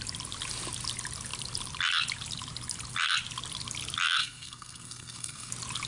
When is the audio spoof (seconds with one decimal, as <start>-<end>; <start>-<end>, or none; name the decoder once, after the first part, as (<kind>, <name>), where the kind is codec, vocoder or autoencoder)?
4.2-5.5 (codec, SNAC)